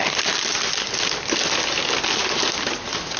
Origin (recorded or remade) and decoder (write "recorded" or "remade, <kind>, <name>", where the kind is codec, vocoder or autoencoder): recorded